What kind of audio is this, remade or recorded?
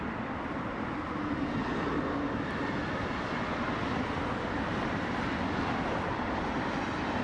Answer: recorded